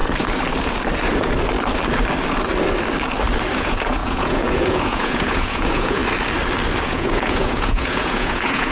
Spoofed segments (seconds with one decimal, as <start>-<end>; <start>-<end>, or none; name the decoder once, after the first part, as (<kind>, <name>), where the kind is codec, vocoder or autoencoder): 3.6-6.0 (vocoder, Vocos); 6.8-8.7